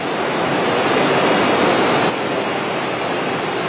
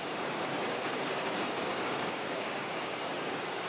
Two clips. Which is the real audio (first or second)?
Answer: first